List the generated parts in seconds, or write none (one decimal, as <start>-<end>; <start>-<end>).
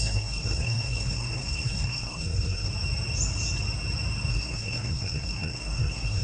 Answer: 0.0-2.7; 4.3-6.2